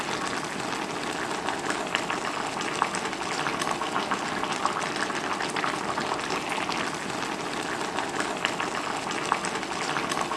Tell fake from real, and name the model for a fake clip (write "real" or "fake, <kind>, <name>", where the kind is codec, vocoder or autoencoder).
real